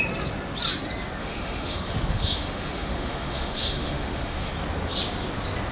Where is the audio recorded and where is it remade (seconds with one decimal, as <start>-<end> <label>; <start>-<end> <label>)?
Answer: 0.0-1.2 recorded; 1.2-4.5 remade; 4.5-5.7 recorded